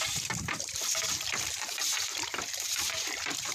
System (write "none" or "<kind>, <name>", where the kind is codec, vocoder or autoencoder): vocoder, BigVGAN v2